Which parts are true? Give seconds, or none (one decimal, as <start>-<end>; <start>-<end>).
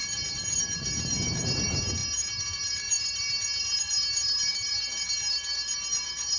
none